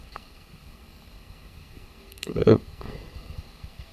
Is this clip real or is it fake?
fake